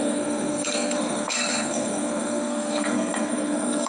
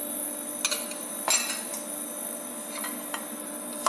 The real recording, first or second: second